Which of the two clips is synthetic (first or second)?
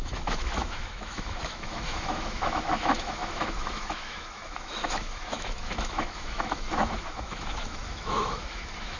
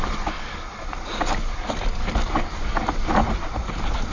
first